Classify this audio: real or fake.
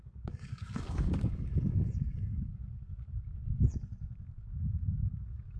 fake